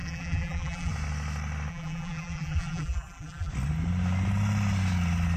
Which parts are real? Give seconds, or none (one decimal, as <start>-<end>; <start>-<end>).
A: 0.9-1.7; 3.5-5.4